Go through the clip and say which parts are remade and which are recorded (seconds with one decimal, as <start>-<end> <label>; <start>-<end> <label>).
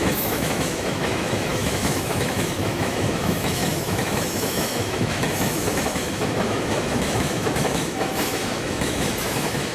0.0-9.7 remade